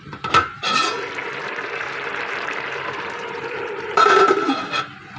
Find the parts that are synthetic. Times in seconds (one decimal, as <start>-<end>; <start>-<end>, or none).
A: 1.4-4.5